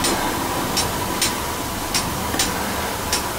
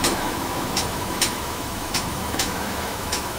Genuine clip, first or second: first